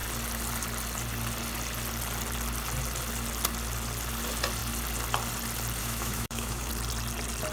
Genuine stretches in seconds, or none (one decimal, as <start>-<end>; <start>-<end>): 0.0-5.8; 6.7-7.5